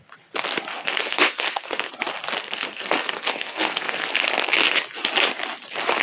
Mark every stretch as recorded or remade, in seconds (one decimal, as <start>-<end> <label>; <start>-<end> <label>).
0.0-0.7 recorded; 0.7-1.9 remade; 1.9-2.4 recorded; 2.4-4.1 remade; 4.1-6.0 recorded